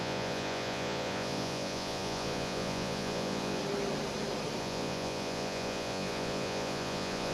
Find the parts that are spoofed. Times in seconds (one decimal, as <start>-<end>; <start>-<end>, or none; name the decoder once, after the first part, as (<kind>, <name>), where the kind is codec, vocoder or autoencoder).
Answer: 0.0-3.6 (vocoder, Vocos); 4.6-7.3